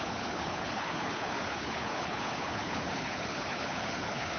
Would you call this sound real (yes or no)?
no